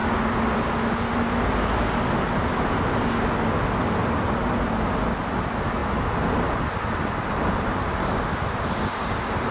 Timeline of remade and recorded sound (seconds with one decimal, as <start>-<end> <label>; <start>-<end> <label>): 0.0-9.5 recorded